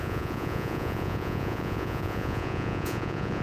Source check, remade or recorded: remade